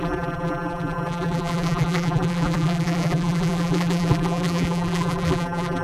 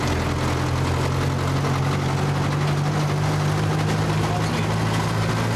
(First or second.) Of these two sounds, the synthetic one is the first